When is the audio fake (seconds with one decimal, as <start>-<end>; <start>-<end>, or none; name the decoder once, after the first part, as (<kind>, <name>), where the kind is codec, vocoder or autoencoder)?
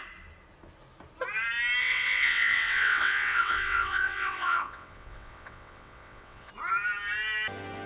1.8-6.5 (vocoder, WaveNeXt)